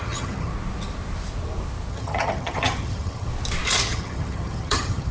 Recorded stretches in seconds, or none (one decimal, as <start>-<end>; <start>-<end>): 0.5-1.9; 3.3-3.8